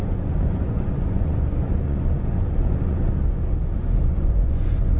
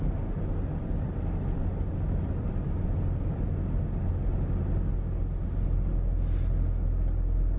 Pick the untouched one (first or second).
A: second